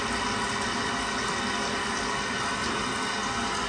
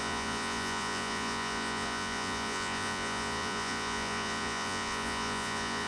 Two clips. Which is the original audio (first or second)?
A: first